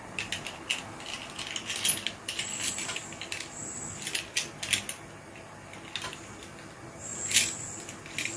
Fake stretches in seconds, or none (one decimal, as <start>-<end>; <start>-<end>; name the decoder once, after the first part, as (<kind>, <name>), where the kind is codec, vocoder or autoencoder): none